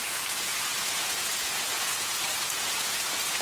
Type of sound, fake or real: fake